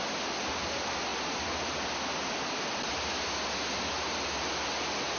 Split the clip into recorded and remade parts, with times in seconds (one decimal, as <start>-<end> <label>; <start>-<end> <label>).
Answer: 0.0-5.2 recorded